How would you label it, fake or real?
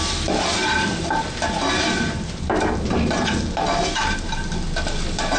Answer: real